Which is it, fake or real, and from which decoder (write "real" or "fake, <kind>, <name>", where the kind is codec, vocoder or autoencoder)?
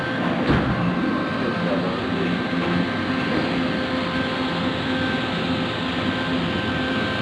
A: real